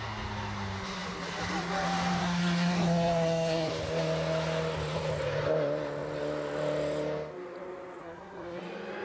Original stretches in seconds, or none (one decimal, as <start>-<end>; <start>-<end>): 0.0-2.2; 3.7-8.0; 8.6-9.0